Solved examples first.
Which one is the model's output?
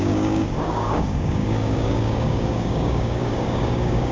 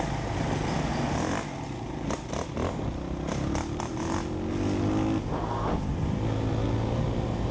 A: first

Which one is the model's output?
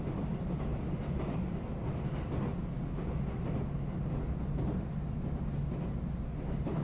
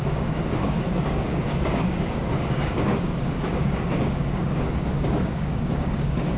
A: second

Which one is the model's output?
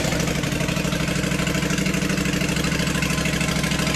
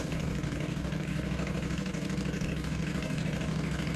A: second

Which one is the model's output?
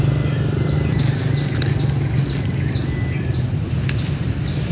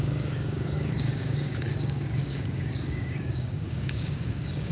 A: second